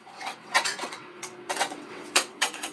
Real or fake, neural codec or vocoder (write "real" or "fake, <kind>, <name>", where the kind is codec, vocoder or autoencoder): fake, vocoder, WaveNeXt